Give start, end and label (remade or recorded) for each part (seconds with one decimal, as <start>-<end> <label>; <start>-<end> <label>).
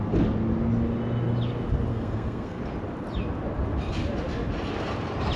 0.0-1.9 recorded; 1.9-2.6 remade; 2.6-5.4 recorded